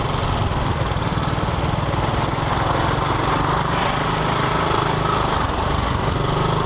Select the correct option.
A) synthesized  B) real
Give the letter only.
B